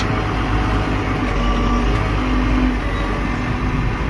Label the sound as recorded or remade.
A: recorded